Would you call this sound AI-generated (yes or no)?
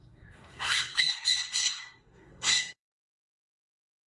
yes